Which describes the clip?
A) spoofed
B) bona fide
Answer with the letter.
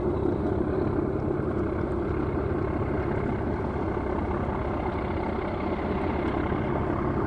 B